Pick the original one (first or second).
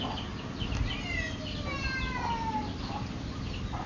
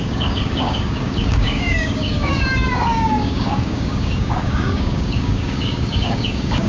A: first